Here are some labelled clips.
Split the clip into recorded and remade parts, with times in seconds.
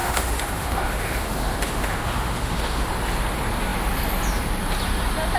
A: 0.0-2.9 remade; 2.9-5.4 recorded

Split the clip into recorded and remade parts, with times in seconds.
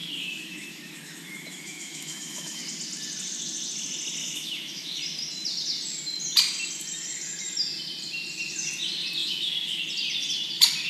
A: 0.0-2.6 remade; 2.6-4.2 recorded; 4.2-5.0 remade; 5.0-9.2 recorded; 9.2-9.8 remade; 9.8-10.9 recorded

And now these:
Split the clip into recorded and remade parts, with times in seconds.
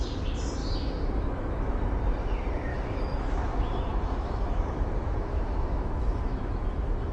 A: 0.0-0.6 recorded; 0.6-1.8 remade; 1.8-2.7 recorded; 2.7-7.1 remade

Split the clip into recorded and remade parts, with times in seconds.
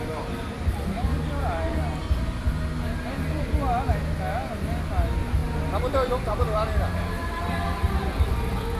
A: 0.0-8.8 recorded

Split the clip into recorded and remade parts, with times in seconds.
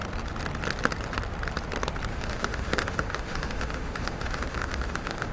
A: 0.0-2.1 recorded; 2.1-5.3 remade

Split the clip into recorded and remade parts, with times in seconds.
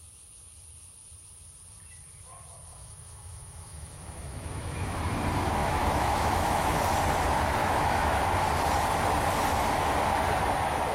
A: 0.0-2.7 recorded; 2.7-5.0 remade; 5.0-5.6 recorded; 5.6-6.8 remade; 6.8-7.6 recorded; 7.6-8.2 remade; 8.2-10.9 recorded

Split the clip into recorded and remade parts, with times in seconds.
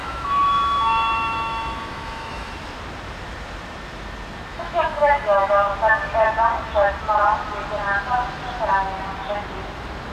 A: 0.0-2.5 remade; 2.5-4.5 recorded; 4.5-5.5 remade; 5.5-10.1 recorded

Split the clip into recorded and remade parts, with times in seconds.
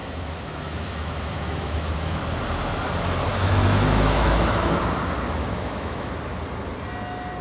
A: 0.0-2.2 remade; 2.2-3.3 recorded; 3.3-4.8 remade; 4.8-5.4 recorded; 5.4-6.1 remade; 6.1-7.4 recorded